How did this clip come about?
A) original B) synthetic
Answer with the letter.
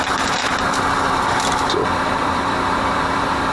B